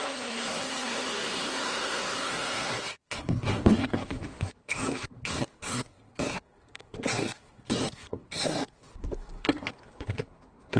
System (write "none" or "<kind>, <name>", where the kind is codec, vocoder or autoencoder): codec, SNAC